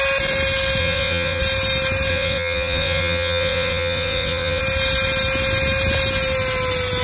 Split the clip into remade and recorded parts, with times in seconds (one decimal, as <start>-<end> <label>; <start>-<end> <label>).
0.0-0.8 recorded; 0.8-1.4 remade; 1.4-2.1 recorded; 2.1-4.6 remade; 4.6-7.0 recorded